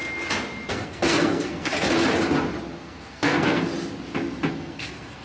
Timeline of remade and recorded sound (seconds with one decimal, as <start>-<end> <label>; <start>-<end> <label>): 0.0-0.7 recorded; 0.7-1.7 remade; 1.7-2.8 recorded; 2.8-3.7 remade; 3.7-4.5 recorded; 4.5-5.2 remade